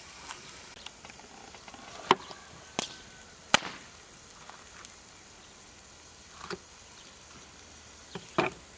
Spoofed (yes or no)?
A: no